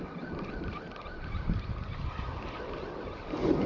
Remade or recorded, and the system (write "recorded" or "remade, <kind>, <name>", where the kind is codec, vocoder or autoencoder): recorded